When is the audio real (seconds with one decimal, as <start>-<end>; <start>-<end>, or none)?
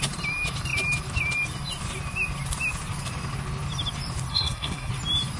0.0-4.3; 4.9-5.4